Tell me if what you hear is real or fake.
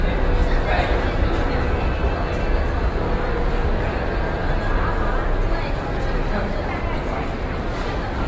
real